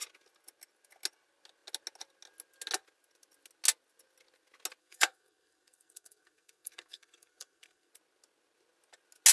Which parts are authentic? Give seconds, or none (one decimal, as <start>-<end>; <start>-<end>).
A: 0.0-4.8; 7.9-9.3